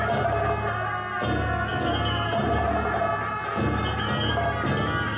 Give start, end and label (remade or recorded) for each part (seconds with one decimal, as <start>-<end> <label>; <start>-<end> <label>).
0.0-5.2 recorded